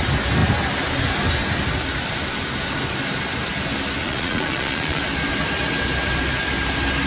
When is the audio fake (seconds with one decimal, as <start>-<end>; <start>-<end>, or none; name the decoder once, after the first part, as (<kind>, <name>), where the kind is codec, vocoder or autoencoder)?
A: 4.0-5.0 (vocoder, Vocos)

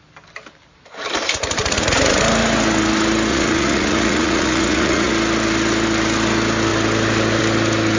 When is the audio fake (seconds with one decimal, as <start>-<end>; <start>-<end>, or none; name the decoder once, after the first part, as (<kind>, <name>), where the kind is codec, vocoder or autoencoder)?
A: 1.6-2.2 (vocoder, Vocos); 3.3-5.1

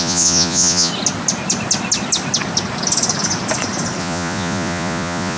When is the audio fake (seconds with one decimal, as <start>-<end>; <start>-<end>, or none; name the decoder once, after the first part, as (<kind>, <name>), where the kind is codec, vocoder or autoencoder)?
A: 0.0-0.9 (vocoder, Vocos); 4.0-5.4

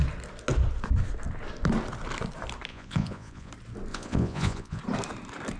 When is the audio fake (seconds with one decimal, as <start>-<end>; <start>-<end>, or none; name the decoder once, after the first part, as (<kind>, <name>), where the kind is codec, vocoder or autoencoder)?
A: 2.7-3.5 (vocoder, Vocos); 3.9-4.8

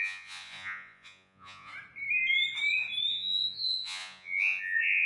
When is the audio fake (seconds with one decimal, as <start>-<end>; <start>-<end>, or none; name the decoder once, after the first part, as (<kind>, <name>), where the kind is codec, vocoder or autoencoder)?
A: 0.0-1.7 (vocoder, Vocos); 3.1-5.1

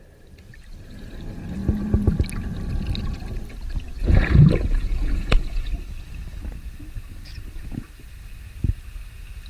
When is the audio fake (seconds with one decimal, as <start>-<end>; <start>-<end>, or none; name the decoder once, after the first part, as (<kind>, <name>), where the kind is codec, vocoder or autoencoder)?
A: 4.0-5.7 (vocoder, Vocos)